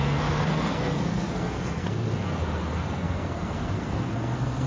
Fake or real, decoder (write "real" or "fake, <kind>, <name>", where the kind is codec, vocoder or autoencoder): fake, codec, SNAC